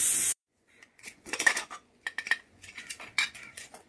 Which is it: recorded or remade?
remade